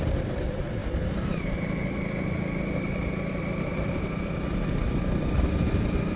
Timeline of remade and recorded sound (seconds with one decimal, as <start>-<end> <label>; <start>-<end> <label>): 0.0-6.2 remade